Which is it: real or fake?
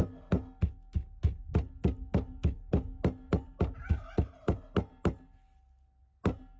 real